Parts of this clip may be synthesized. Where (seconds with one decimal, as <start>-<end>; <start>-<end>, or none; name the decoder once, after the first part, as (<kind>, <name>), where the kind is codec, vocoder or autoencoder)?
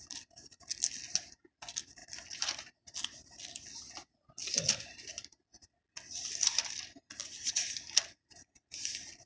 none